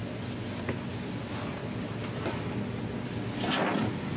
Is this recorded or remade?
recorded